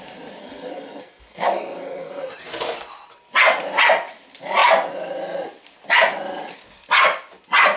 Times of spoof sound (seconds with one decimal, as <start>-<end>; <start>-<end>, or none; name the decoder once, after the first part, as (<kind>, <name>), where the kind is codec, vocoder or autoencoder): 0.4-2.3 (codec, SNAC)